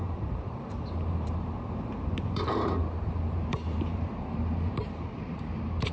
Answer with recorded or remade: remade